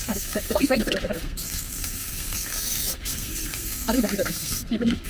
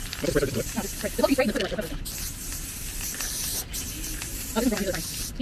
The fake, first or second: first